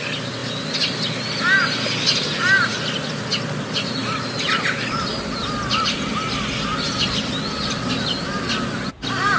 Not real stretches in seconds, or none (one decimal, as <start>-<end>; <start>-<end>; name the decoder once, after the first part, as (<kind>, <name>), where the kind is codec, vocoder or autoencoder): 0.4-1.0 (vocoder, BigVGAN v2); 2.7-3.3